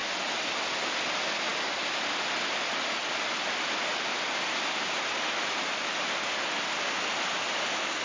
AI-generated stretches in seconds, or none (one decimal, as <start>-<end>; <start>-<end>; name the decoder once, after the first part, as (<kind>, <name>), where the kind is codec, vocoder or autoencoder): none

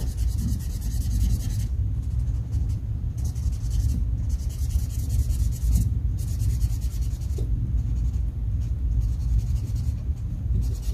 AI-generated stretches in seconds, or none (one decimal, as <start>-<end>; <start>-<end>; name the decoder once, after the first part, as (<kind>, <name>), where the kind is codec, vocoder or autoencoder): none